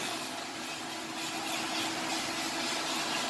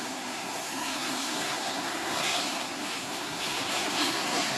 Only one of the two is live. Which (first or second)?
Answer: first